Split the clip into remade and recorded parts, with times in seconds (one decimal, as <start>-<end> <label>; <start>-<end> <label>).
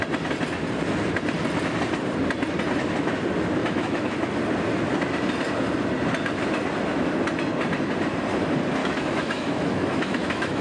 0.0-3.6 recorded; 3.6-4.3 remade; 4.3-8.8 recorded; 8.8-10.6 remade